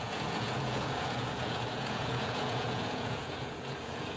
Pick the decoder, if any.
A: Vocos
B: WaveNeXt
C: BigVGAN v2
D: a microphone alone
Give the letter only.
A